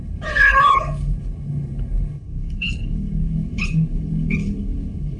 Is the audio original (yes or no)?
no